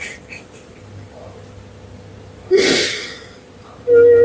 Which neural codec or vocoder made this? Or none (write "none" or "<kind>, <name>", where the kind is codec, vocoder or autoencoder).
none